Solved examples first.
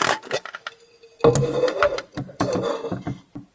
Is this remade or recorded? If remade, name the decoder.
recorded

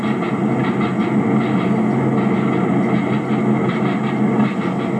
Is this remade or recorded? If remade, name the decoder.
recorded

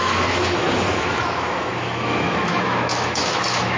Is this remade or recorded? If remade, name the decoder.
remade, autoencoder, DAC-VAE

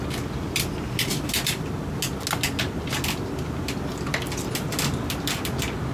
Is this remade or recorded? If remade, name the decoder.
recorded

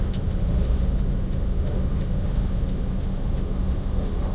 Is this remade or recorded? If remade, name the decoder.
remade, autoencoder, DAC-VAE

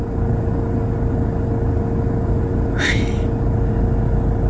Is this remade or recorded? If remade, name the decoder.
recorded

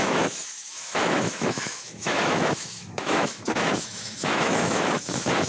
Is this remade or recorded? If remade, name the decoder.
remade, autoencoder, DAC-VAE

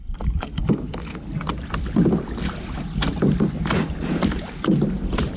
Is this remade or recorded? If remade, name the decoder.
recorded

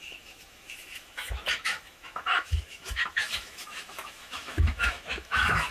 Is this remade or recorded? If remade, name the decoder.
remade, autoencoder, DAC-VAE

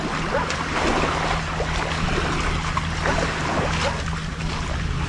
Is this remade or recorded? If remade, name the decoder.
recorded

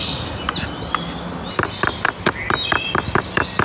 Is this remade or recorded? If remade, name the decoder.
recorded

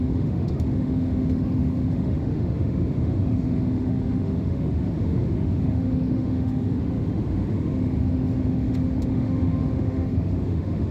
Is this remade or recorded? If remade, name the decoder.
remade, autoencoder, DAC-VAE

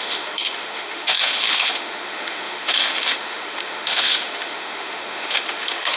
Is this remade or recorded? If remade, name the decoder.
remade, autoencoder, DAC-VAE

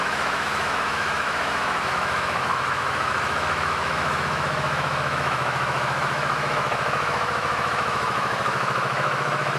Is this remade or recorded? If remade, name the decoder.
remade, autoencoder, DAC-VAE